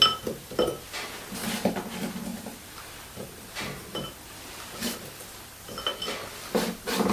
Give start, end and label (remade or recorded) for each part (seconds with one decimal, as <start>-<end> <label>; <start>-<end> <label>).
0.0-2.3 recorded; 2.3-5.1 remade; 5.1-7.1 recorded